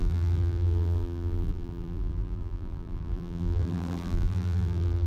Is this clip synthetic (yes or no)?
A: yes